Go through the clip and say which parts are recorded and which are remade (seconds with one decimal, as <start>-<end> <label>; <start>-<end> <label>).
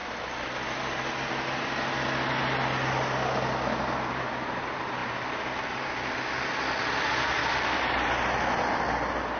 0.0-5.0 recorded; 5.0-5.9 remade; 5.9-7.4 recorded; 7.4-8.1 remade; 8.1-9.4 recorded